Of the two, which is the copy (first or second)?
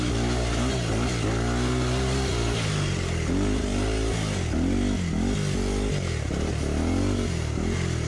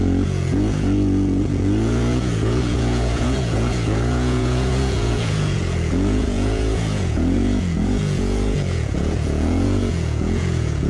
second